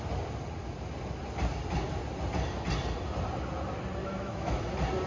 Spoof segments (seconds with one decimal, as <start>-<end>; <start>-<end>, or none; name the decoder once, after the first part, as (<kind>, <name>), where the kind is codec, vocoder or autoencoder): 4.0-4.6 (autoencoder, DAC-VAE)